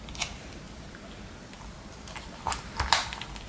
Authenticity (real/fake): real